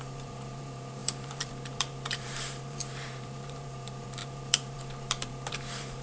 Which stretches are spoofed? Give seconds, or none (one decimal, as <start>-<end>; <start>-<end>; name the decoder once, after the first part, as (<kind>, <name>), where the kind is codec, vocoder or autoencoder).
0.0-6.0 (vocoder, BigVGAN v2)